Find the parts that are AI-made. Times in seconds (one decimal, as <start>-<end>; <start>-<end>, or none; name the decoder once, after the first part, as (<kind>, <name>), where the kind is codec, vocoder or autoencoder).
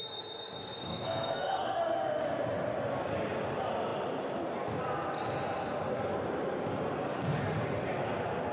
0.9-1.8 (codec, SNAC)